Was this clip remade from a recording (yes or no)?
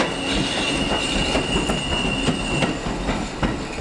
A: no